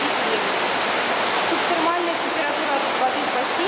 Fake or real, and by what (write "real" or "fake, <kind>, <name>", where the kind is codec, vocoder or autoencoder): real